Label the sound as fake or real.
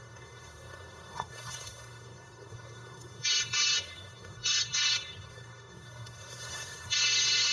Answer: fake